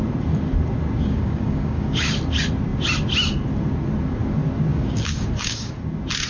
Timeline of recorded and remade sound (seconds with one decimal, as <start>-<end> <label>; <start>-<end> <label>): 0.0-1.0 recorded; 1.0-2.1 remade; 2.1-4.7 recorded; 4.7-5.8 remade; 5.8-6.3 recorded